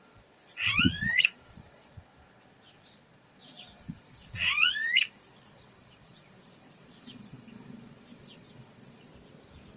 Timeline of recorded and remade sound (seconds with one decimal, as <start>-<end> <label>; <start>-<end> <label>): 0.0-9.1 remade; 9.1-9.8 recorded